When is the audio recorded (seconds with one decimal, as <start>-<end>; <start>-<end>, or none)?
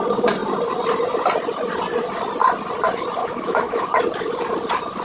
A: 0.0-3.2; 4.0-5.0